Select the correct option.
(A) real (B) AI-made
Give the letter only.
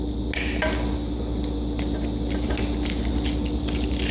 A